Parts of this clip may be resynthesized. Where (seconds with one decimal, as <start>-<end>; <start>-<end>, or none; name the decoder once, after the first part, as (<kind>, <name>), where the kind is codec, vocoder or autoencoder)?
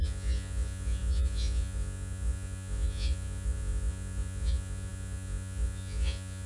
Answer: 0.0-6.5 (vocoder, Vocos)